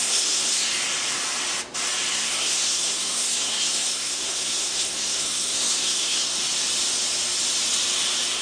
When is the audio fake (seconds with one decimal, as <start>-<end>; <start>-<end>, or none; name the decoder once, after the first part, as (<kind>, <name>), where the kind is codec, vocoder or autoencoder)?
0.0-0.7 (codec, SNAC); 2.1-6.4

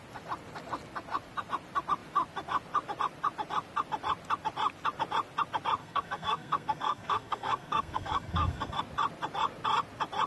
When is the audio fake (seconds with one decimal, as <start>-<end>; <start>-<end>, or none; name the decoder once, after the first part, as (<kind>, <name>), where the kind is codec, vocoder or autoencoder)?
5.8-8.8 (codec, SNAC)

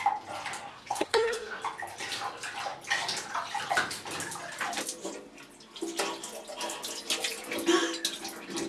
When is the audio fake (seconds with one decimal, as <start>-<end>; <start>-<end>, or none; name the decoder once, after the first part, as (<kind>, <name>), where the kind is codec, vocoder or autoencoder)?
0.7-1.6 (codec, SNAC)

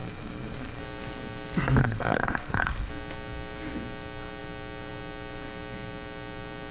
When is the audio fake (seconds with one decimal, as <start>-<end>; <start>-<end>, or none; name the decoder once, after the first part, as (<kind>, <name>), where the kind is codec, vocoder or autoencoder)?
0.0-0.8 (codec, SNAC); 1.8-2.9

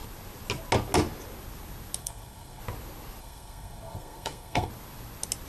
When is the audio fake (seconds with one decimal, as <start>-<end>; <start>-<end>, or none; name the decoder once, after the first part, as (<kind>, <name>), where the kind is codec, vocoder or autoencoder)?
2.0-2.6 (codec, SNAC); 3.2-4.7

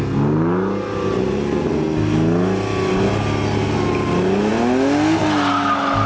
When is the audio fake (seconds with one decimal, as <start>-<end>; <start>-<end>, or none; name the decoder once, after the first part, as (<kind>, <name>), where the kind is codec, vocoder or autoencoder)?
none